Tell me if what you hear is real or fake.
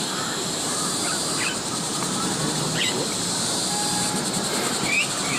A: fake